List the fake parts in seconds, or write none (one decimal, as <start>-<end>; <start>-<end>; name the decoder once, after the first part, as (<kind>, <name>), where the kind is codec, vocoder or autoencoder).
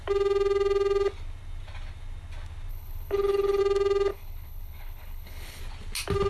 2.7-3.6 (codec, HILCodec); 4.1-5.6